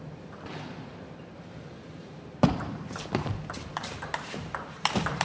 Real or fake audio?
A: fake